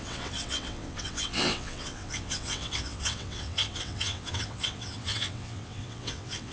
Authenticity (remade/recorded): remade